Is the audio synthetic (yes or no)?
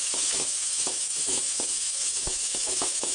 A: yes